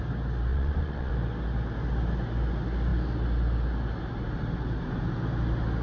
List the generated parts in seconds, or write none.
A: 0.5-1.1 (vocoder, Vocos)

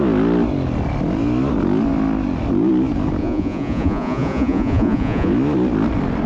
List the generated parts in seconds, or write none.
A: 3.2-5.3 (vocoder, Vocos)

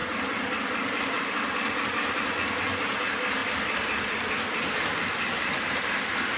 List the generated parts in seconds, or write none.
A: 0.0-1.8 (vocoder, BigVGAN v2); 3.4-4.3

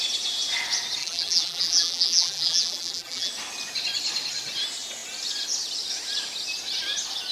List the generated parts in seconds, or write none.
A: 1.0-3.3 (vocoder, BigVGAN v2)

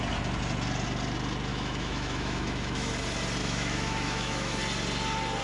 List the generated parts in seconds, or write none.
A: 1.5-2.9 (autoencoder, DAC-VAE); 3.4-4.6

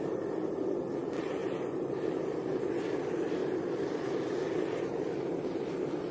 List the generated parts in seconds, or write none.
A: none

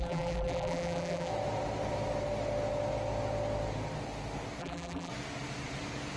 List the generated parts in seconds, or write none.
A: 0.0-1.3 (vocoder, BigVGAN v2); 4.6-5.1